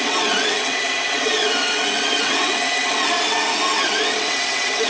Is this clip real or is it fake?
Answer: fake